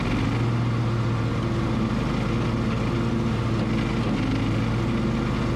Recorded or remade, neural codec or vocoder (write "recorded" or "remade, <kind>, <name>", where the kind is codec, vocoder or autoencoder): recorded